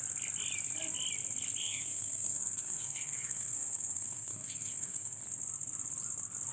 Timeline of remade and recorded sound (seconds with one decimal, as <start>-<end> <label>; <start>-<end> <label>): 0.0-1.6 recorded; 1.6-5.2 remade; 5.2-6.5 recorded